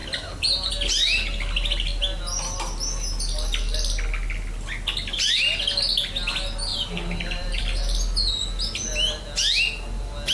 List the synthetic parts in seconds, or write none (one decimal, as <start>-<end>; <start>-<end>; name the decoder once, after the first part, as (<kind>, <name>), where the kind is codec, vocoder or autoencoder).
0.0-0.7 (vocoder, BigVGAN v2); 6.7-7.6